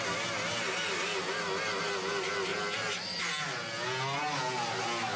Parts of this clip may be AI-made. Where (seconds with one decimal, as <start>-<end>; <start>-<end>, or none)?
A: none